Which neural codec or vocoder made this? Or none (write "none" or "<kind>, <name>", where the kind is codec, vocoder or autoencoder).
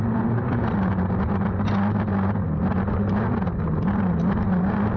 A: none